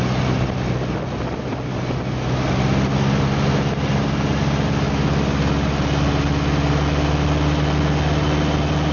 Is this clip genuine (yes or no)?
yes